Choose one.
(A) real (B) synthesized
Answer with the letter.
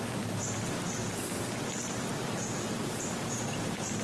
A